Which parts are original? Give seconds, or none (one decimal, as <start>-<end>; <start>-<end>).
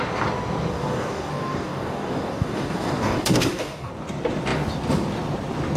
0.0-0.7; 3.9-5.8